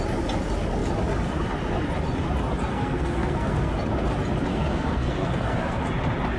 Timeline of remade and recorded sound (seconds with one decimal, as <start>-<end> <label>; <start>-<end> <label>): 0.0-2.7 recorded; 2.7-3.7 remade; 3.7-4.5 recorded; 4.5-5.8 remade; 5.8-6.4 recorded